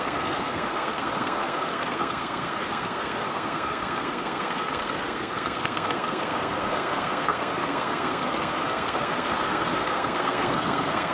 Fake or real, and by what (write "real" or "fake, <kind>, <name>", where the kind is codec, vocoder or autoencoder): fake, codec, SNAC